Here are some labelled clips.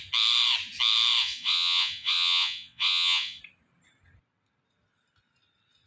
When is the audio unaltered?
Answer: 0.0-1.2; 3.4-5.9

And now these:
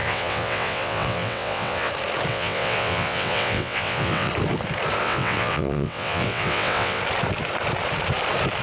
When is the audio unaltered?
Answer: 1.9-2.3; 4.3-5.0; 7.0-8.6

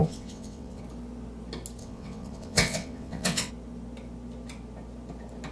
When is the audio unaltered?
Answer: 0.8-1.8; 3.5-5.5